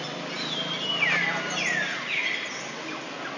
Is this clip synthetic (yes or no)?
no